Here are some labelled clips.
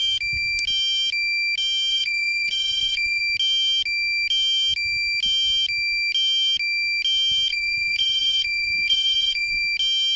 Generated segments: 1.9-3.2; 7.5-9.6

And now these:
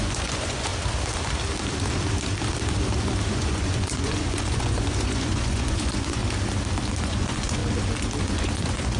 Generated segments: 0.0-0.7; 3.3-6.2; 7.0-7.6; 8.2-9.0